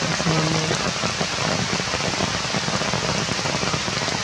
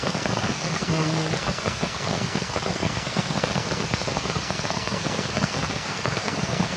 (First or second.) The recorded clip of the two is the first